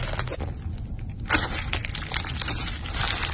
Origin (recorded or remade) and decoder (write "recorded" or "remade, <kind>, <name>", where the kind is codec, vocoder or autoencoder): recorded